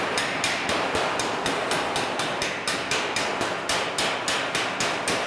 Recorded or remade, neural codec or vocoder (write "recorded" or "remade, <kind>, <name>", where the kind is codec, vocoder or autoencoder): recorded